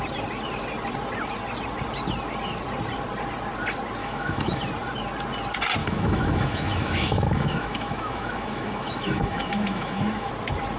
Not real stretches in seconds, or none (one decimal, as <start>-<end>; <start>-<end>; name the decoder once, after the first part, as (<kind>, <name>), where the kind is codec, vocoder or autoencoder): 4.0-4.6 (autoencoder, DAC-VAE); 5.8-10.3